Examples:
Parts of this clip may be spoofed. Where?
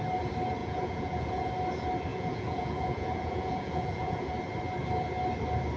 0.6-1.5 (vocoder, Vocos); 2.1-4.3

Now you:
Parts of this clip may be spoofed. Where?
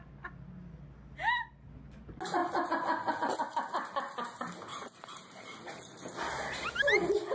4.7-5.7 (vocoder, BigVGAN v2)